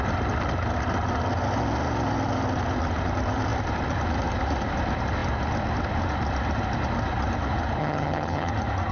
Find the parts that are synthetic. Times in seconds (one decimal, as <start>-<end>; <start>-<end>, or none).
7.8-8.5